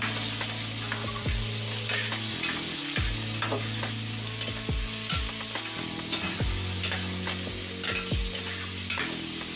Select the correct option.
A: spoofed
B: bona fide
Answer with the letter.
B